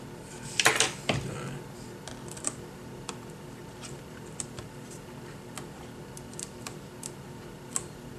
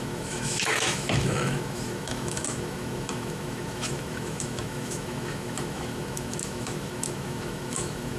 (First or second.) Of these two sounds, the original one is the first